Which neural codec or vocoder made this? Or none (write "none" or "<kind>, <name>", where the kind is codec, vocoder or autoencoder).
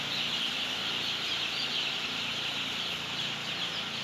none